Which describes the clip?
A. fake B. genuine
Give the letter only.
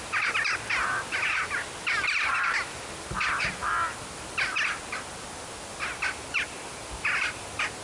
B